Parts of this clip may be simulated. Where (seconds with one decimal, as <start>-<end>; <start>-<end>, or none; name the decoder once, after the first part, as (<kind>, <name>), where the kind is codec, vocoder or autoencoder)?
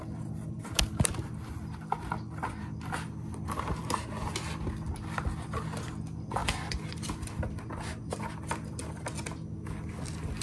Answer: none